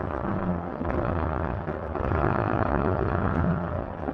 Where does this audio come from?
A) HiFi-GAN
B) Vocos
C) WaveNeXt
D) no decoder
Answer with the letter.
C